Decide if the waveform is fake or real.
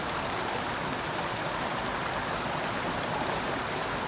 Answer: real